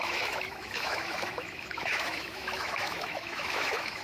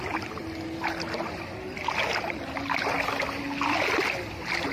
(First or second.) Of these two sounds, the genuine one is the second